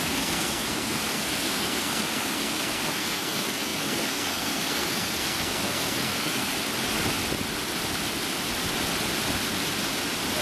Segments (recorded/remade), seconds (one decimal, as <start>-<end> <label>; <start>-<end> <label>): 0.0-6.5 remade; 6.5-10.4 recorded

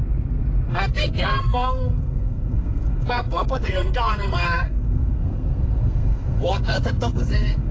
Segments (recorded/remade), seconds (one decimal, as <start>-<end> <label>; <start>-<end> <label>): 0.0-0.7 recorded; 0.7-7.7 remade

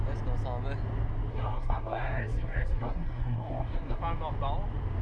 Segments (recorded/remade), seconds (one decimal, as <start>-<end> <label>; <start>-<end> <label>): 0.0-1.3 recorded; 1.3-4.0 remade; 4.0-5.0 recorded